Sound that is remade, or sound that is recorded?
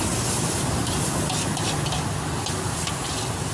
recorded